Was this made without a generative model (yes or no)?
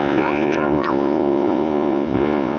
no